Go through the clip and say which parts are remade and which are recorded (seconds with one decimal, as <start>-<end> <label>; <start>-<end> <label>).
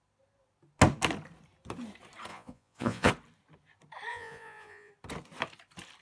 0.0-2.3 recorded; 2.3-3.1 remade; 3.1-4.1 recorded; 4.1-4.9 remade; 4.9-6.0 recorded